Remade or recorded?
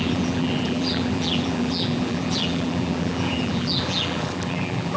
remade